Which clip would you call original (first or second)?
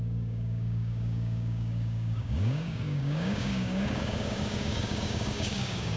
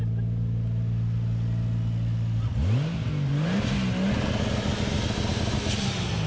second